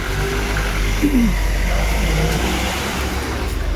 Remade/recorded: recorded